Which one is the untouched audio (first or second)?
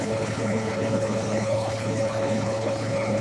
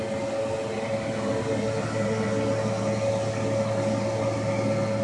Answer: second